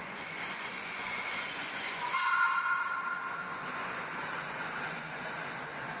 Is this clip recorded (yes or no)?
no